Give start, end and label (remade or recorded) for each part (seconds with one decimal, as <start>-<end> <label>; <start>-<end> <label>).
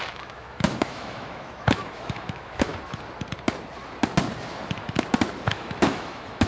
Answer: 0.0-2.7 remade; 2.7-5.5 recorded; 5.5-6.5 remade